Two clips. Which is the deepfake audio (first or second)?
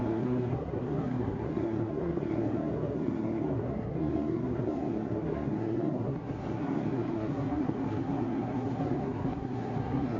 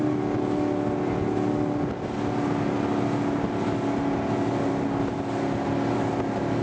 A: first